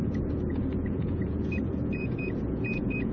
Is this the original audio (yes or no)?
no